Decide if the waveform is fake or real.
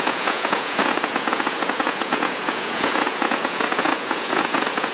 fake